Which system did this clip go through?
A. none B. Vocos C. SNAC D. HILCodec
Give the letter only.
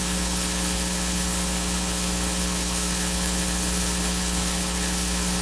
D